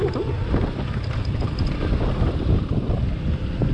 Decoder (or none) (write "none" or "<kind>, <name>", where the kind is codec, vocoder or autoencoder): none